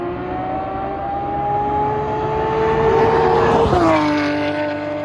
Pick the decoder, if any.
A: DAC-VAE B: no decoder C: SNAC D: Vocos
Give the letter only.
B